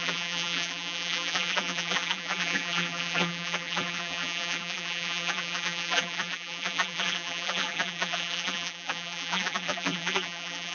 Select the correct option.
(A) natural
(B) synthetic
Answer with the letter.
B